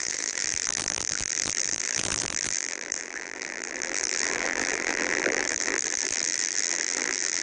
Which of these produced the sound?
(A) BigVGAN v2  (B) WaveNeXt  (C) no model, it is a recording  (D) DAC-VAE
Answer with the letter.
A